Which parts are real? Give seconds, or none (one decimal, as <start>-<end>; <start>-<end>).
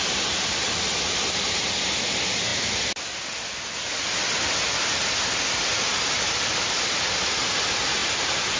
0.0-8.0